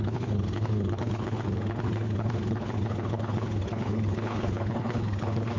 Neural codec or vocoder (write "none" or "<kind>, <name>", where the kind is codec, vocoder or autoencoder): codec, HILCodec